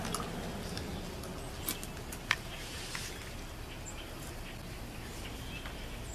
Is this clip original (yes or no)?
yes